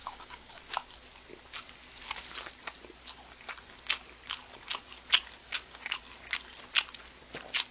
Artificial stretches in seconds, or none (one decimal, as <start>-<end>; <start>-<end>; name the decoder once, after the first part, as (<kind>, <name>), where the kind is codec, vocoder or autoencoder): 0.0-0.6 (codec, DAC); 5.4-6.0